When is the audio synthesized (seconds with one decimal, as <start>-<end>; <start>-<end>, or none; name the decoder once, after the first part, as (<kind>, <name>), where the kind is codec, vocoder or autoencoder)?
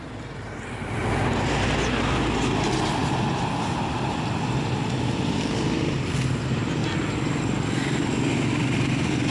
none